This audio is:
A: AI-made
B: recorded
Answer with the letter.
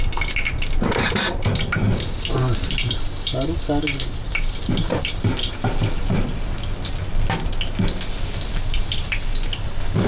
B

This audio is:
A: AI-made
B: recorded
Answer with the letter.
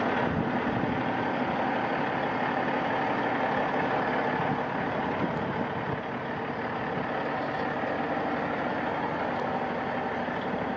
B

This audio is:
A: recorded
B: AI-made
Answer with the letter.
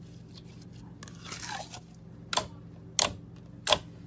A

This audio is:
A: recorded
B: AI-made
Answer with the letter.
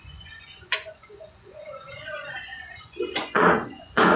B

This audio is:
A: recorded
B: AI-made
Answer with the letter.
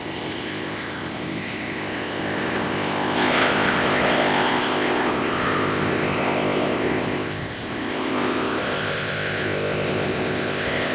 B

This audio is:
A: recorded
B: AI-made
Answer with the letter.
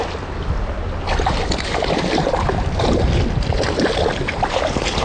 A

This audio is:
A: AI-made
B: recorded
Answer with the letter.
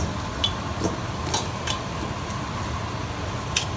B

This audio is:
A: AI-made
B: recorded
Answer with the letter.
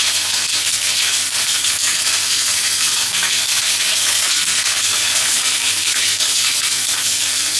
A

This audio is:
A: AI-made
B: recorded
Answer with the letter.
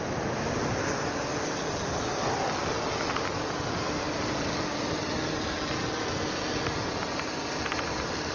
B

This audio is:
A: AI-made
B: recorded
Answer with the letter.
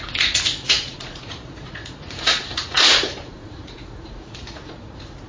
A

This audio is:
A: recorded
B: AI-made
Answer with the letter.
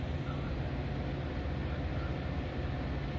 A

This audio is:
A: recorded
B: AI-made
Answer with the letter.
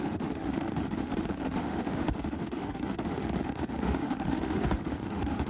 B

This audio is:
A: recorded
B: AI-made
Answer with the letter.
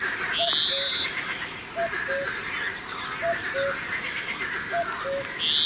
A